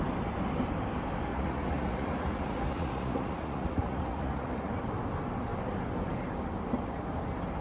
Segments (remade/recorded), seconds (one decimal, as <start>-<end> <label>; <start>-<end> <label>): 0.0-1.3 recorded; 1.3-4.7 remade; 4.7-7.6 recorded